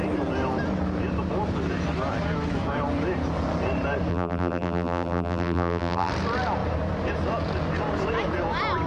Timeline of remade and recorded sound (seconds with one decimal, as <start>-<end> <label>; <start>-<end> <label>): 0.0-4.1 recorded; 4.1-6.1 remade; 6.1-8.9 recorded

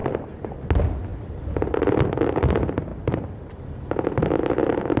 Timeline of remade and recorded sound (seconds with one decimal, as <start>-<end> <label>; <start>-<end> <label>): 0.0-1.1 recorded; 1.1-2.4 remade; 2.4-5.0 recorded

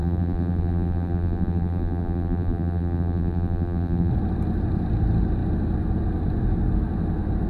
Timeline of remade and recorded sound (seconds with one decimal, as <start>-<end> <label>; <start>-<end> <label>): 0.0-4.1 remade; 4.1-7.5 recorded

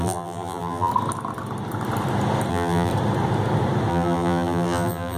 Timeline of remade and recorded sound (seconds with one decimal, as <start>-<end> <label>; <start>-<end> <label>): 0.0-0.9 remade; 0.9-2.5 recorded; 2.5-2.9 remade; 2.9-3.9 recorded; 3.9-5.2 remade

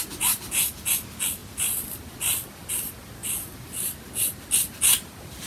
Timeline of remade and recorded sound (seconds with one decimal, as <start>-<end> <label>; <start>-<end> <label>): 0.0-5.5 remade

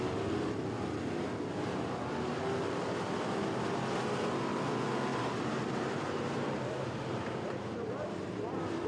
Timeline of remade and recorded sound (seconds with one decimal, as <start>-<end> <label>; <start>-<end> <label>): 0.0-5.1 recorded; 5.1-8.9 remade

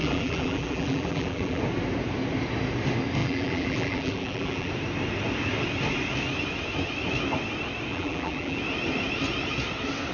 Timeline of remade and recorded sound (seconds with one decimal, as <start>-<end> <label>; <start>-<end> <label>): 0.0-1.6 remade; 1.6-3.2 recorded; 3.2-4.7 remade; 4.7-7.9 recorded; 7.9-8.6 remade; 8.6-10.1 recorded

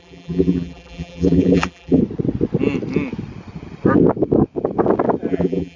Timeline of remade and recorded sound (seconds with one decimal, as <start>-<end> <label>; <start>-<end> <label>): 0.0-2.0 remade; 2.0-5.3 recorded; 5.3-5.8 remade